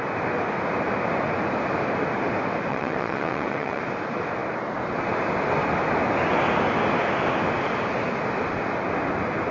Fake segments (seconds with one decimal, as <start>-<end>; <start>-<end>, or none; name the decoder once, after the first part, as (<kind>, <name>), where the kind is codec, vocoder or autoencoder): 2.7-3.8 (vocoder, WaveNeXt)